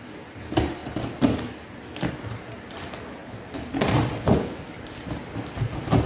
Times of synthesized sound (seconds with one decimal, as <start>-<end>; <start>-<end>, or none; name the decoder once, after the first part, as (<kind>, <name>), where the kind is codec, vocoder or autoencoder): none